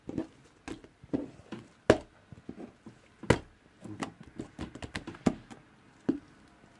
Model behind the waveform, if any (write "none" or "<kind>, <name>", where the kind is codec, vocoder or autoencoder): none